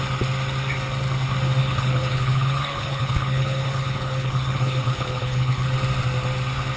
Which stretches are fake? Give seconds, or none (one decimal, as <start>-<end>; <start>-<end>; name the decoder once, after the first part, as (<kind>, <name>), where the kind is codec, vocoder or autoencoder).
1.6-5.7 (codec, HILCodec)